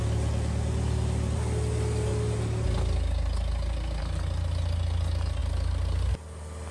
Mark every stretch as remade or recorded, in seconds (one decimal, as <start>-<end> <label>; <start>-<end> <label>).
0.0-6.7 recorded